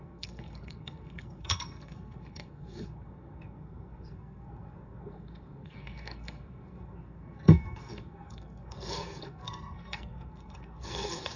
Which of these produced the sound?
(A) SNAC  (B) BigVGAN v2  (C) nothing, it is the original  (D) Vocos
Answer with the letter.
A